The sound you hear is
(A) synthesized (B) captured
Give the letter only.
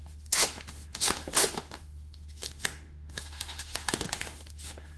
A